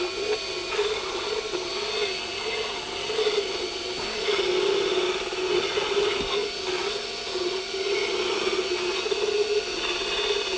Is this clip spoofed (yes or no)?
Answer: no